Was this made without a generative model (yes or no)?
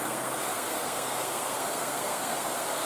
no